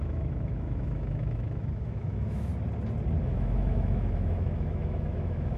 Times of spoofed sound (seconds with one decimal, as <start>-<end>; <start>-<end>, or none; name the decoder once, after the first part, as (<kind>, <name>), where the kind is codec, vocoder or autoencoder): 0.0-2.5 (autoencoder, DAC-VAE); 3.2-5.6